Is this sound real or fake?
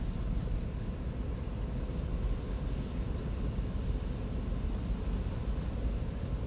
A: real